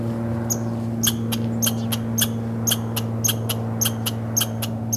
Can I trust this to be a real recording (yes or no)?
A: yes